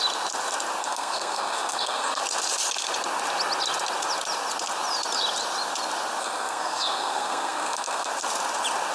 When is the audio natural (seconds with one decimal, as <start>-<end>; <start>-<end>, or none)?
0.0-0.8; 2.2-6.2; 8.1-8.9